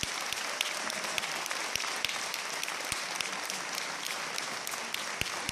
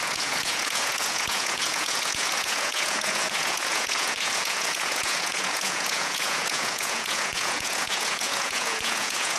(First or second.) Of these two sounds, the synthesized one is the second